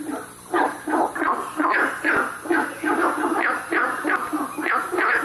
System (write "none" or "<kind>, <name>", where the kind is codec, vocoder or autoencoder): none